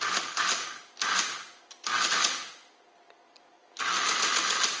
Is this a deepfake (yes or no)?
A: no